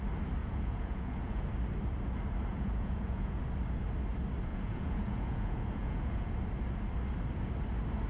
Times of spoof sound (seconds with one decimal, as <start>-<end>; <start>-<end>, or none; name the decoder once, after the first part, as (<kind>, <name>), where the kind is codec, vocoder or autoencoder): 0.4-1.4 (vocoder, Vocos); 2.5-3.4; 4.5-6.3